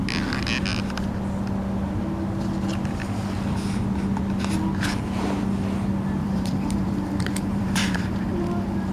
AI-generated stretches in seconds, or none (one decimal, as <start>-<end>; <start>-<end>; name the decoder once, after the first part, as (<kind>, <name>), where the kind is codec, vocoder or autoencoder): 6.2-8.9 (vocoder, BigVGAN v2)